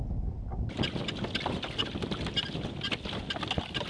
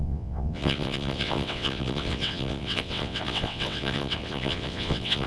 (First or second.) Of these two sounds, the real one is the first